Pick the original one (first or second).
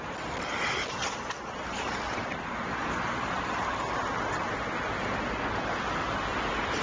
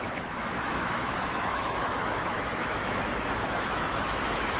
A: first